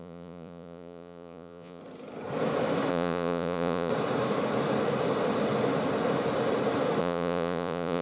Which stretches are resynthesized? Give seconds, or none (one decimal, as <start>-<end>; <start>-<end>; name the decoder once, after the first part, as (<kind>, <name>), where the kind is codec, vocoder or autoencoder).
0.0-1.8 (vocoder, Vocos); 2.9-3.9; 7.0-8.0